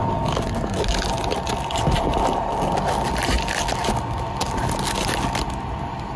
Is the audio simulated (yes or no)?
no